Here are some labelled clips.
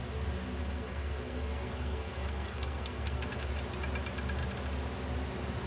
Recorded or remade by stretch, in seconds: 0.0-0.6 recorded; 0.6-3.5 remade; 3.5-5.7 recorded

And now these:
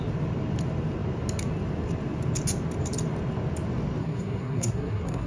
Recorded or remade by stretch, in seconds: 0.0-4.0 recorded; 4.0-5.3 remade

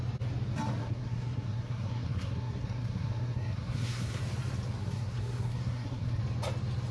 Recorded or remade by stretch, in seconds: 0.0-0.8 recorded; 0.8-4.2 remade; 4.2-4.8 recorded; 4.8-6.2 remade; 6.2-6.9 recorded

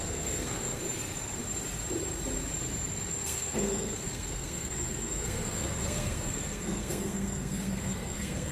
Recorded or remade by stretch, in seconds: 0.0-0.8 remade; 0.8-3.1 recorded; 3.1-8.5 remade

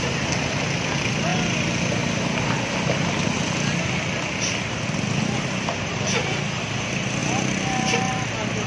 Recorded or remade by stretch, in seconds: 0.0-8.7 recorded

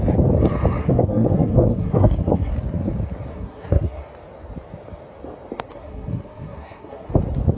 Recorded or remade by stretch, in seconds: 0.0-0.8 recorded; 0.8-2.5 remade; 2.5-3.3 recorded; 3.3-4.0 remade; 4.0-5.7 recorded; 5.7-7.1 remade; 7.1-7.6 recorded